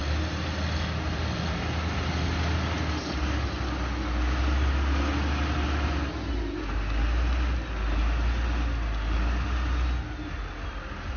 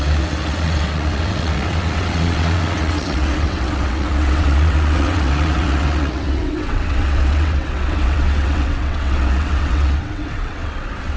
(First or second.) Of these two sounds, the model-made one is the second